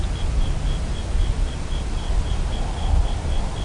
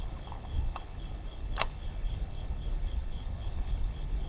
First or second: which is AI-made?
second